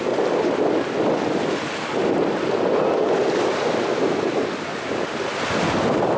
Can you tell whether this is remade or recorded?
recorded